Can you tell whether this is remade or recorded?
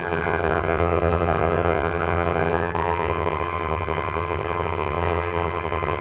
remade